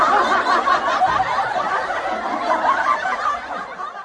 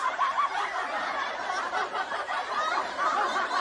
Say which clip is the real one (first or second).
first